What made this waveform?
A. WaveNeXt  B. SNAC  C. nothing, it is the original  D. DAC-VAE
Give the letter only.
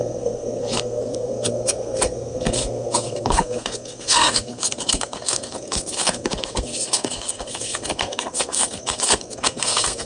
B